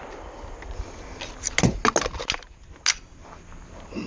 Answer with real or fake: real